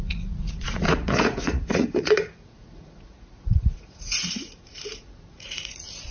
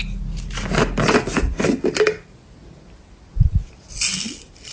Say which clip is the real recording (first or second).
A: second